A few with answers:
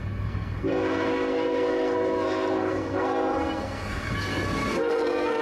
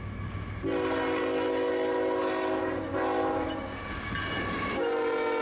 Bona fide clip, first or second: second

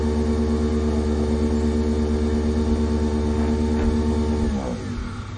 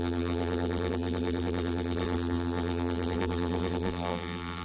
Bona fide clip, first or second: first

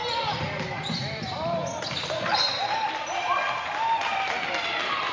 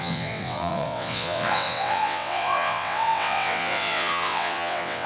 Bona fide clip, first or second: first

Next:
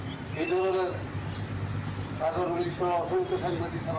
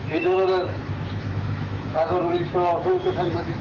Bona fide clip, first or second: first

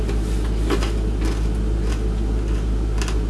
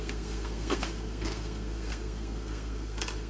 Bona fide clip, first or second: first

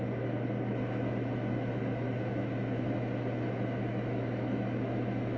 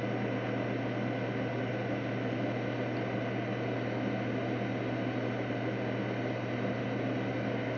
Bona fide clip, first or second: second